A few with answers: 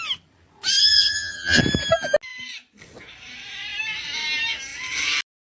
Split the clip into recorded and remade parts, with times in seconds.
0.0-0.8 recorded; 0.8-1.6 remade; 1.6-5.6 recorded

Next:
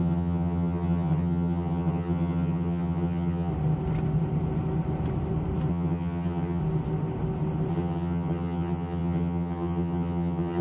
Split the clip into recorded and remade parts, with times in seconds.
0.0-3.5 remade; 3.5-5.7 recorded; 5.7-6.6 remade; 6.6-7.7 recorded; 7.7-10.6 remade

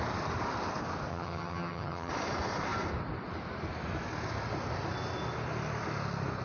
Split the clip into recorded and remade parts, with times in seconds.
0.0-1.1 recorded; 1.1-2.1 remade; 2.1-6.4 recorded